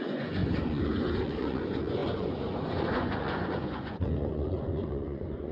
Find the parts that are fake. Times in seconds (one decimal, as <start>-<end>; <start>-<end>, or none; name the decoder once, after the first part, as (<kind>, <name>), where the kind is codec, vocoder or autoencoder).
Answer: 0.0-5.5 (vocoder, Vocos)